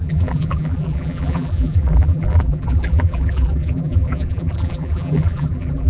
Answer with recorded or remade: remade